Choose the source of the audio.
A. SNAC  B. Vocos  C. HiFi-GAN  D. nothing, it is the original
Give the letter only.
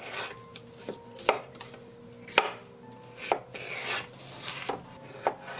D